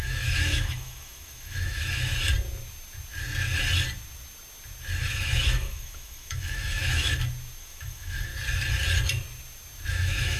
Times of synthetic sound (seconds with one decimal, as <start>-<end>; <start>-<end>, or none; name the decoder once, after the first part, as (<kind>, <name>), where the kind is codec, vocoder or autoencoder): 0.0-2.1 (autoencoder, DAC-VAE); 5.0-7.1; 7.6-8.3; 9.9-10.4